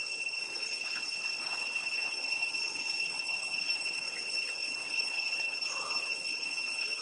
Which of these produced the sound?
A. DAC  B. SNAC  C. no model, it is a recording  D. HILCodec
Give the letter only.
D